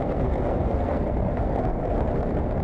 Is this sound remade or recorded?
remade